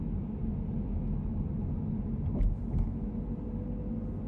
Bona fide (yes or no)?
yes